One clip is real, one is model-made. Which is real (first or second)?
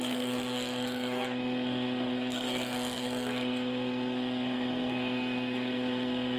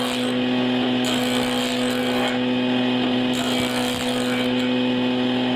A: second